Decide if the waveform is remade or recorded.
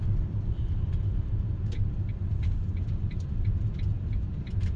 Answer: recorded